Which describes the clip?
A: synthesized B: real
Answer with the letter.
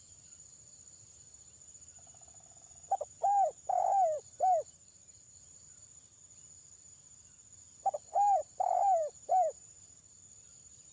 A